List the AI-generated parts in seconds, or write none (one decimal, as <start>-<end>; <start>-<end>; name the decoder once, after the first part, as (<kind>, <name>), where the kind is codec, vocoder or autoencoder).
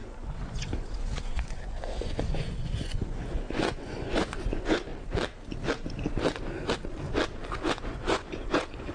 0.0-4.9 (vocoder, Vocos); 7.7-8.9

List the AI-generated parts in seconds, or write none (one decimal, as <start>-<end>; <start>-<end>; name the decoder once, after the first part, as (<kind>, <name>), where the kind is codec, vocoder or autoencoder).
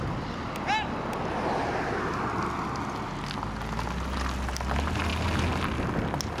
none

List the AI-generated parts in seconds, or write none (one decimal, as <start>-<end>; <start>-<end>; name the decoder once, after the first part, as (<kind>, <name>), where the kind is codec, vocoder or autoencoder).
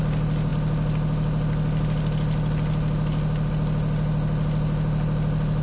none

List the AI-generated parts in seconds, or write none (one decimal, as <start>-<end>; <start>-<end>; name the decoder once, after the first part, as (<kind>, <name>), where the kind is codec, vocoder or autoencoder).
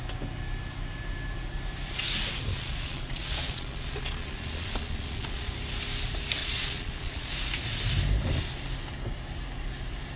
2.5-5.5 (vocoder, Vocos); 6.4-7.3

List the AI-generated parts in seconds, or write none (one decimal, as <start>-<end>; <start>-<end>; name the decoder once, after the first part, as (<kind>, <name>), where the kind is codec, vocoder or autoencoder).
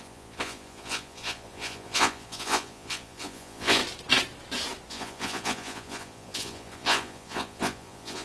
0.0-3.8 (vocoder, Vocos); 4.9-8.2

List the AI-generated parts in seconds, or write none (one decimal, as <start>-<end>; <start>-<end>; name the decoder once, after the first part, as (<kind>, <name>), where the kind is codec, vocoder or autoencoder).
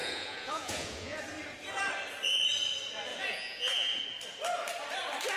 0.0-1.2 (vocoder, Vocos); 3.1-4.0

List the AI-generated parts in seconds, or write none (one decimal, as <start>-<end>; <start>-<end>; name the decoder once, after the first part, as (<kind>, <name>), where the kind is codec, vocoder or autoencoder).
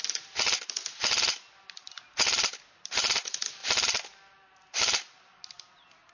none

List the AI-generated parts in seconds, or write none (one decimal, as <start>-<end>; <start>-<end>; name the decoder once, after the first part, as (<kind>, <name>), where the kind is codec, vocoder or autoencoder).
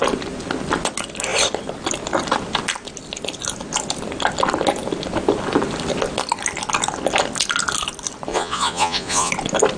8.3-9.3 (vocoder, Vocos)